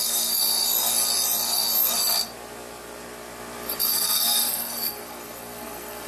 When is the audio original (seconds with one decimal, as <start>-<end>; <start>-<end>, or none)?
0.4-3.9